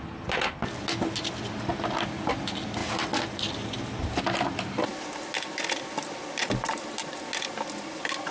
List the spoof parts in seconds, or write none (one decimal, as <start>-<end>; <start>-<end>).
2.8-4.2